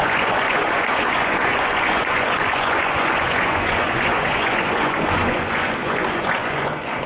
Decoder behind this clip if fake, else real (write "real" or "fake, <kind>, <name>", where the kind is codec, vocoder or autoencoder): fake, vocoder, Vocos